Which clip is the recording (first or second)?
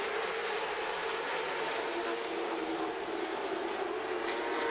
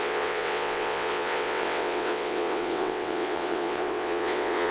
first